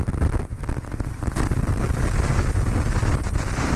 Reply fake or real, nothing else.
real